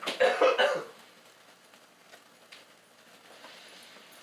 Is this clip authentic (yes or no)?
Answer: yes